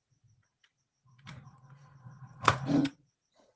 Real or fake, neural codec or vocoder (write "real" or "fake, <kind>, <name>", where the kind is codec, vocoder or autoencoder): fake, vocoder, Vocos